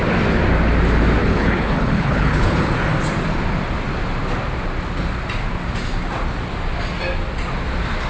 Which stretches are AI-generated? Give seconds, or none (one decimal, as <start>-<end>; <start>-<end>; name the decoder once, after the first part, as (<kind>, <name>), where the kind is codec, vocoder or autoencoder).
1.2-2.7 (codec, HILCodec)